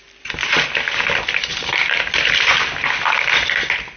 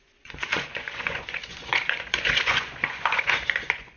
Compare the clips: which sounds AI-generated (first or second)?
second